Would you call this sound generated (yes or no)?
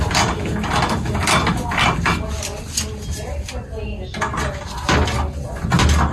no